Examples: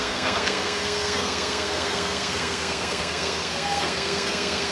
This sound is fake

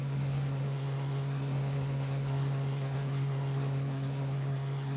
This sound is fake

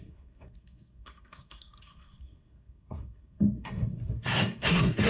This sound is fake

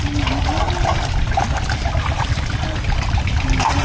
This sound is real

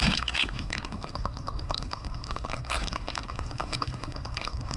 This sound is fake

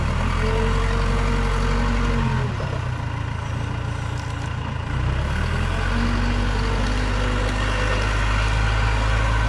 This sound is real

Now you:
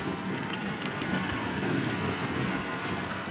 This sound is fake